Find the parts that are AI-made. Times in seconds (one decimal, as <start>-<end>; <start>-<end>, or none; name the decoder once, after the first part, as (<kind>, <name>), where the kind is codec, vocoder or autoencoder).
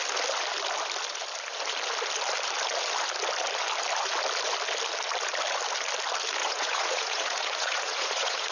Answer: 6.4-8.5 (vocoder, Vocos)